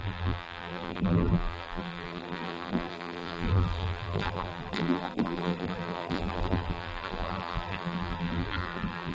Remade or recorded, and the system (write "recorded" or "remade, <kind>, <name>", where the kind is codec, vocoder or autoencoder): remade, vocoder, BigVGAN v2